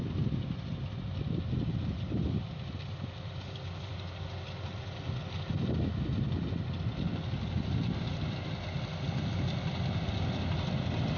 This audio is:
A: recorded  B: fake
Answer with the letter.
A